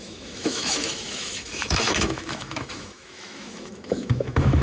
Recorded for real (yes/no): no